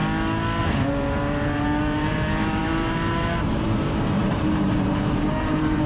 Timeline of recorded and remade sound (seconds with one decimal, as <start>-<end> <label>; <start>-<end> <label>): 0.0-0.6 recorded; 0.6-5.9 remade